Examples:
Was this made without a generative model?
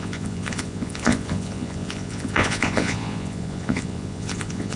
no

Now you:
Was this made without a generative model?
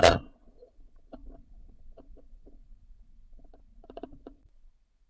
no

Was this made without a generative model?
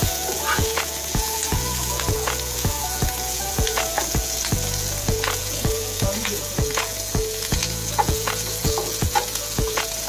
no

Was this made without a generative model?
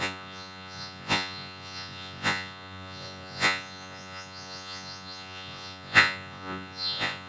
no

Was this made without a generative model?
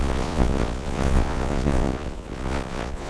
no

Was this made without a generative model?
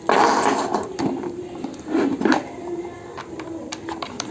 yes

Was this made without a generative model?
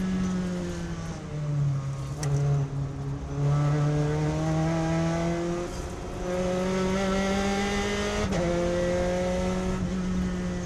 yes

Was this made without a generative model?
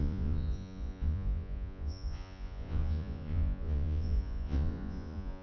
no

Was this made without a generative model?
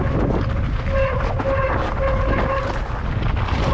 yes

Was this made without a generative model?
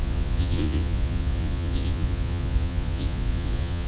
no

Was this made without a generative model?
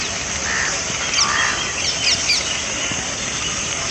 yes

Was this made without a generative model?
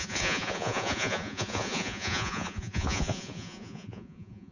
no